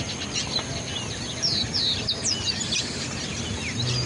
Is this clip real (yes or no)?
yes